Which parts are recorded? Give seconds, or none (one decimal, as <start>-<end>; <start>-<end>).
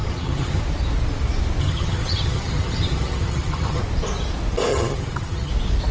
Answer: 0.6-1.6; 3.8-4.7; 5.5-5.9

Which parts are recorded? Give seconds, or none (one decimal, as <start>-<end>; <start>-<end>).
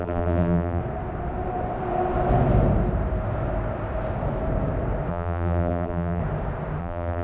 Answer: 0.8-5.1; 6.2-6.8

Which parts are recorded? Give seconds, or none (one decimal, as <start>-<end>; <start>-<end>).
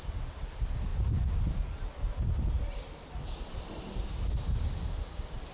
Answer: 0.0-5.5